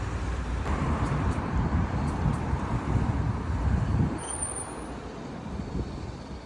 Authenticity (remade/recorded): remade